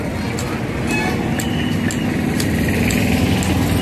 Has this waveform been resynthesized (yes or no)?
no